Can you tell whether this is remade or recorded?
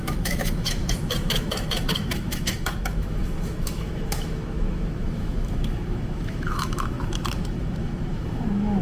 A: remade